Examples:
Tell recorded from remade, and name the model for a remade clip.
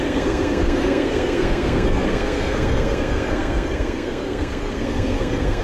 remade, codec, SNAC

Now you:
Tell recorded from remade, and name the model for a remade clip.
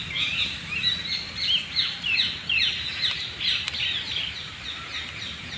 recorded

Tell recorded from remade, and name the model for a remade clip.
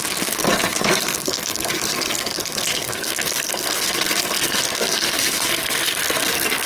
remade, codec, SNAC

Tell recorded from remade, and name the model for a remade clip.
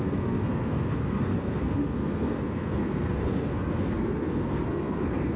remade, codec, SNAC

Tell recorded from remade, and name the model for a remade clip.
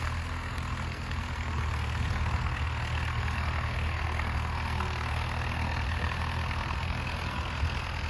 remade, codec, SNAC